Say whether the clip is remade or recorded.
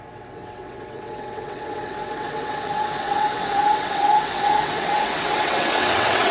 remade